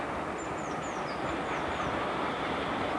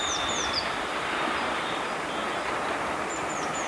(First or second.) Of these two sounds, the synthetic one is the second